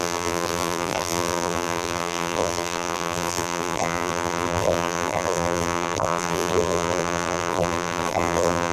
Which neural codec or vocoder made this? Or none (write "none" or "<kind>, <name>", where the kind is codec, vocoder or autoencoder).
vocoder, BigVGAN v2